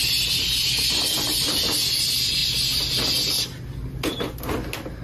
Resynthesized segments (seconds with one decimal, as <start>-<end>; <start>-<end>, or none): none